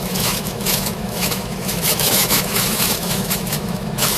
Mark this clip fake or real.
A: fake